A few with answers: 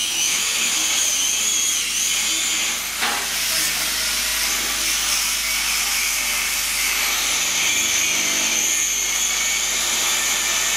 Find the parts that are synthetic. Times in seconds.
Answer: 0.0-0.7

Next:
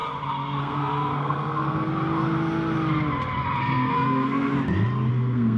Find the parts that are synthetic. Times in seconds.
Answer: 0.6-1.9; 3.6-4.5; 5.1-5.6

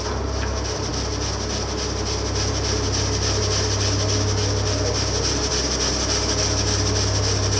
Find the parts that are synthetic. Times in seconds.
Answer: none

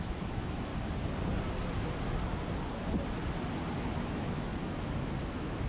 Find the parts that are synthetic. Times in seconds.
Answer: 0.0-0.7; 4.1-4.5; 5.3-5.7

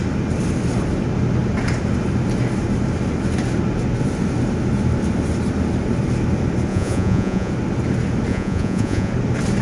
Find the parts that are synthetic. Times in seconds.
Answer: 6.7-7.5; 8.3-9.1

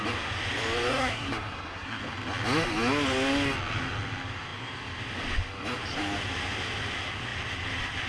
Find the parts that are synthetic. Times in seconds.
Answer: 0.9-2.0